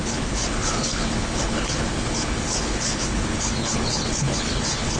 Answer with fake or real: fake